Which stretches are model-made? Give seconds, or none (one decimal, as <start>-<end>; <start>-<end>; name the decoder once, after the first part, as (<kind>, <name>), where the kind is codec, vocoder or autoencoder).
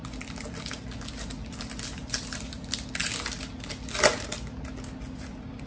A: none